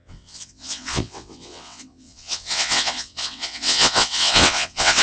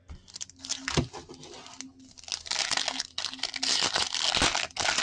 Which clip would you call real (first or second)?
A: second